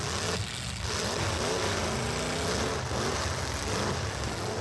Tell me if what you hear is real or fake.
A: real